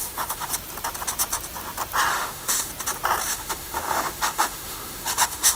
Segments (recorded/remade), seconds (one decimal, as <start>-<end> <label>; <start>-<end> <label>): 0.0-0.5 remade; 0.5-2.1 recorded; 2.1-2.7 remade; 2.7-3.3 recorded; 3.3-5.6 remade